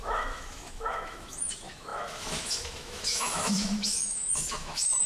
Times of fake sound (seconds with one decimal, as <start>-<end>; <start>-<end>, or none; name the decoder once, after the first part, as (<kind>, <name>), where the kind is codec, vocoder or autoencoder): 0.0-5.1 (autoencoder, DAC-VAE)